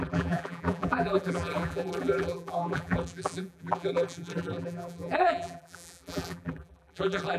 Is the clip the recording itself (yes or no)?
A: no